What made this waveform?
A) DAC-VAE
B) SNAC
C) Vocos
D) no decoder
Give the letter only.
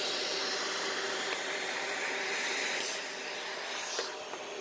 D